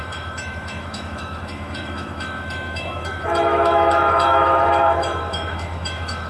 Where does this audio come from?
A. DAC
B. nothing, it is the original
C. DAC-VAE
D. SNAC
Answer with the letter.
C